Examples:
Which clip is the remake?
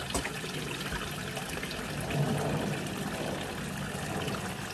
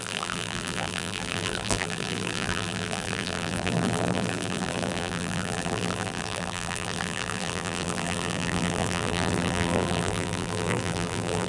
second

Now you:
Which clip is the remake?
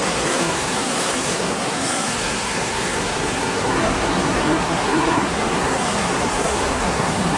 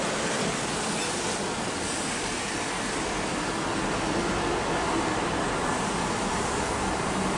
first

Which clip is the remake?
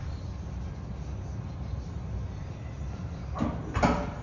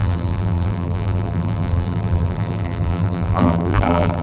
second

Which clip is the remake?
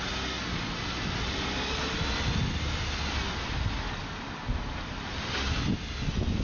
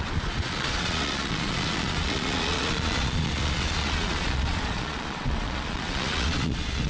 second